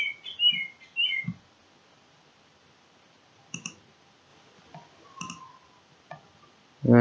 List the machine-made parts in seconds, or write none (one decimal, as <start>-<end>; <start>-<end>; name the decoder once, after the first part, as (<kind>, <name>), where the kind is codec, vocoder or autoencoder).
none